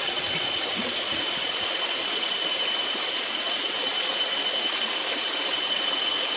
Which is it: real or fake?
real